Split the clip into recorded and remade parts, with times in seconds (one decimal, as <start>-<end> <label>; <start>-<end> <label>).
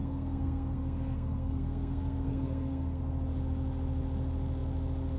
0.0-3.0 remade; 3.0-5.2 recorded